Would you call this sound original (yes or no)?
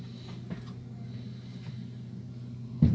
yes